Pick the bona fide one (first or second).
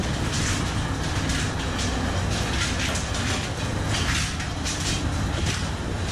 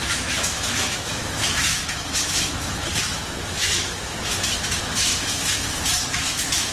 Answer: first